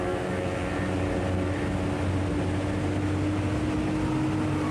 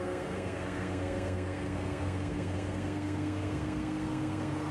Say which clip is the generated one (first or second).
second